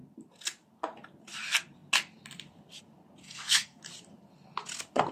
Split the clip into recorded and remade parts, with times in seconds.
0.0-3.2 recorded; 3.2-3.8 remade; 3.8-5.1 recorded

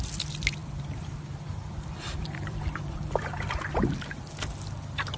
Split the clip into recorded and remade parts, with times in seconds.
0.0-0.6 recorded; 0.6-3.7 remade; 3.7-5.2 recorded